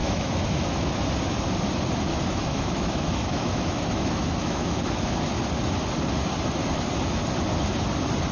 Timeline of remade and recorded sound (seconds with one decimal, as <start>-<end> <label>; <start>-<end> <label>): 0.0-1.0 remade; 1.0-2.1 recorded; 2.1-5.0 remade; 5.0-8.3 recorded